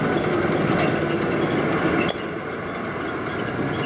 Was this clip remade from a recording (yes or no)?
no